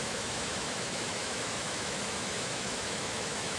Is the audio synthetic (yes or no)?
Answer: yes